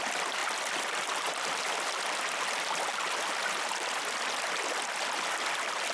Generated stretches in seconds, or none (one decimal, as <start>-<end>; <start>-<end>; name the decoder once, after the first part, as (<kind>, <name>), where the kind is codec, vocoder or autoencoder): none